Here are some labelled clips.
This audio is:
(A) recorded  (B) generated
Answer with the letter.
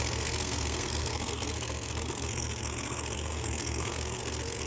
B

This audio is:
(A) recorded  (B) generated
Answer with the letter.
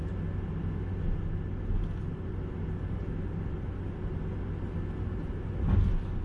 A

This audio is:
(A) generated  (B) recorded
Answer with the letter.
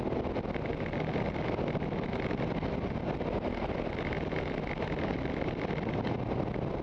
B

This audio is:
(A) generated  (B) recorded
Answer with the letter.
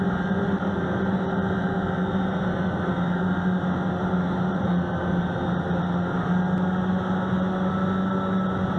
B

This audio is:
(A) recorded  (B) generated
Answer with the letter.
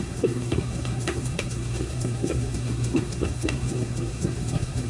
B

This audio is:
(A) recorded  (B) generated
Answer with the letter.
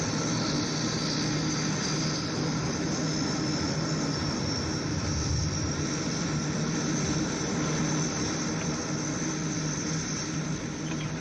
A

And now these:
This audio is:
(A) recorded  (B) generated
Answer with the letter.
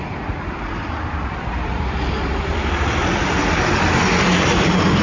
B